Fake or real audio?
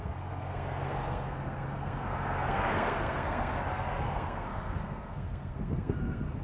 fake